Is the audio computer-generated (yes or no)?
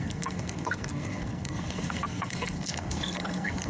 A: yes